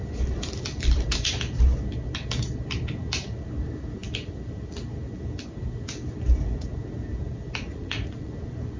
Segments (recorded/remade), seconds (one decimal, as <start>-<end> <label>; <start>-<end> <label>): 0.0-7.7 recorded; 7.7-8.3 remade; 8.3-8.8 recorded

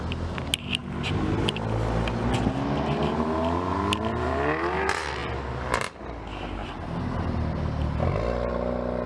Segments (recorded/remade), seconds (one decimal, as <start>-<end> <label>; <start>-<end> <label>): 0.0-9.1 recorded

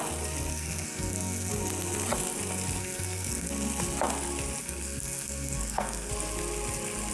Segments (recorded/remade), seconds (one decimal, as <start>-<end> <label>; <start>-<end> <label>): 0.0-0.5 recorded; 0.5-1.5 remade; 1.5-2.8 recorded; 2.8-3.5 remade; 3.5-4.6 recorded; 4.6-6.1 remade; 6.1-7.1 recorded

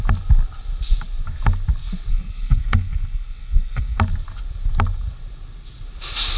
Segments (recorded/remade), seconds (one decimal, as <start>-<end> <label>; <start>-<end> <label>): 0.0-2.1 recorded; 2.1-4.0 remade; 4.0-6.4 recorded

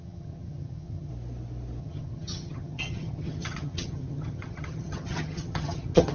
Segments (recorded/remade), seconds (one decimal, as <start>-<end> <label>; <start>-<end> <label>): 0.0-1.1 remade; 1.1-1.8 recorded; 1.8-6.1 remade

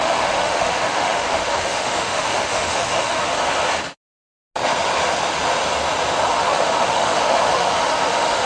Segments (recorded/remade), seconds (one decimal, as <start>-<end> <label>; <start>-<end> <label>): 0.0-3.3 remade; 3.3-6.3 recorded; 6.3-8.5 remade

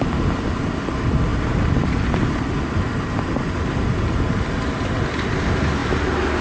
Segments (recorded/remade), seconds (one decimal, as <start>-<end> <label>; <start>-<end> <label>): 0.0-6.4 recorded